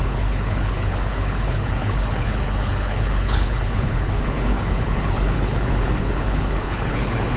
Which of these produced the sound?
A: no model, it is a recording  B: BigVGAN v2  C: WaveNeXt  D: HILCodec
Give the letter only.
D